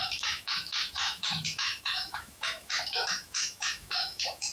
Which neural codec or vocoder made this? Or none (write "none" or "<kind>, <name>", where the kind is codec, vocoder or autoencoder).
autoencoder, DAC-VAE